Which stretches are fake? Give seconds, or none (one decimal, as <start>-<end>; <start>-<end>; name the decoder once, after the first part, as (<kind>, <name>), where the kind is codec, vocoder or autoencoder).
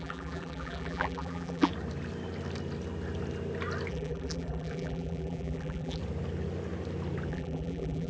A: 0.0-1.7 (vocoder, BigVGAN v2); 3.9-6.0; 7.3-8.1